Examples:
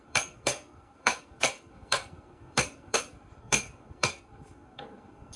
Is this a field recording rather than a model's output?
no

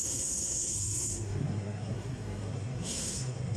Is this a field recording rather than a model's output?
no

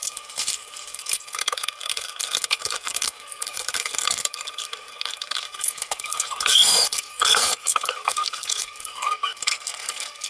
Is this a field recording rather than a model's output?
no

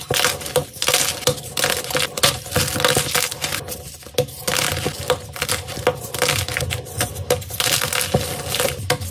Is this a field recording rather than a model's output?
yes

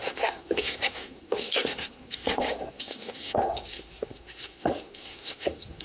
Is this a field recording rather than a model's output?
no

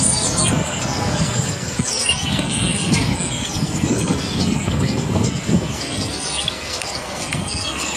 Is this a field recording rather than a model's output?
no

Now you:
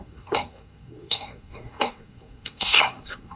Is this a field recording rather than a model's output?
no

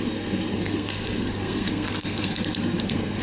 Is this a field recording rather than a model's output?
no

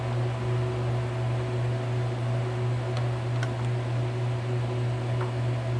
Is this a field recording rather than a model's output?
yes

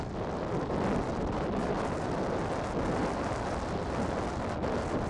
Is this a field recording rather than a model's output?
yes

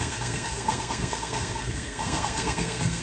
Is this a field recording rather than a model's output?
no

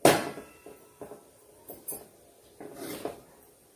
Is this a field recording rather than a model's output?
yes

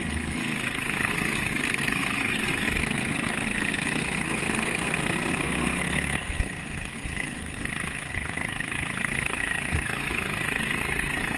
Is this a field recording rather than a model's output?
no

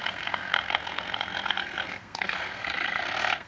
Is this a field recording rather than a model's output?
no